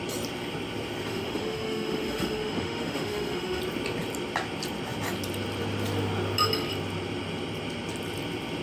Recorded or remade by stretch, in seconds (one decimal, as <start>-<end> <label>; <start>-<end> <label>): 0.0-1.1 recorded; 1.1-3.6 remade; 3.6-8.6 recorded